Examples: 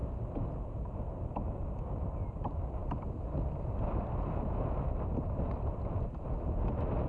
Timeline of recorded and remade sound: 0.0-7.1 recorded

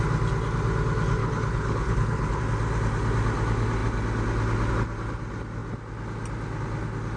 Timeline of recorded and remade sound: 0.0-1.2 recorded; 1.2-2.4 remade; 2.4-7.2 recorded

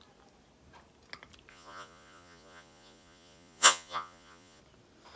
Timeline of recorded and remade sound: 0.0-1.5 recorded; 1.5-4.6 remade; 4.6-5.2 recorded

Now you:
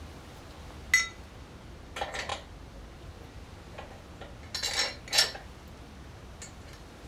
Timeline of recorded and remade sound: 0.0-7.1 recorded